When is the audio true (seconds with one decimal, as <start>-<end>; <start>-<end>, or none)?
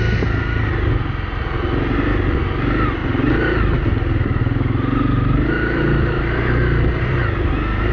0.0-7.9